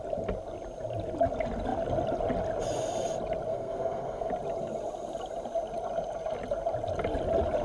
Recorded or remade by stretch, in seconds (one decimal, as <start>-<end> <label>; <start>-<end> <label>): 0.0-3.5 recorded; 3.5-4.3 remade; 4.3-7.6 recorded